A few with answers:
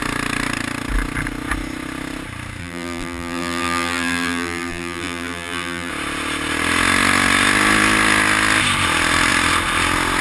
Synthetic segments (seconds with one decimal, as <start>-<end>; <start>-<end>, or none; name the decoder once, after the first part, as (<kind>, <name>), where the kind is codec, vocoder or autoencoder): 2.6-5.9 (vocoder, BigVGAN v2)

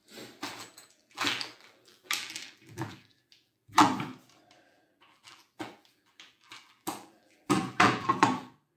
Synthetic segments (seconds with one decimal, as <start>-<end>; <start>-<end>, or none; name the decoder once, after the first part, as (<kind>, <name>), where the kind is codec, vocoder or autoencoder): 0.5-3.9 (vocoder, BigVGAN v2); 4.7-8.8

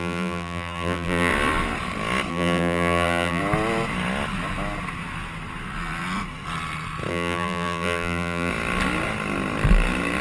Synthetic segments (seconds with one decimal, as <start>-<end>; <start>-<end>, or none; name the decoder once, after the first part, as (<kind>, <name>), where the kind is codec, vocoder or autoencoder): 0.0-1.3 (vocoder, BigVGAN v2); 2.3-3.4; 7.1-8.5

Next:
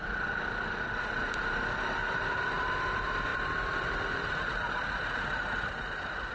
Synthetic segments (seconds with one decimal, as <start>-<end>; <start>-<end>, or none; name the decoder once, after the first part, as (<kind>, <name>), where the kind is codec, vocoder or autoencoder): 2.0-2.7 (vocoder, BigVGAN v2); 3.3-4.4

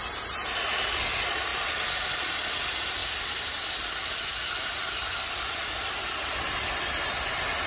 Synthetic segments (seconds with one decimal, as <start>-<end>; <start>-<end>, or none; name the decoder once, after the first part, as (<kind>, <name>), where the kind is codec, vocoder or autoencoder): 3.0-7.7 (vocoder, BigVGAN v2)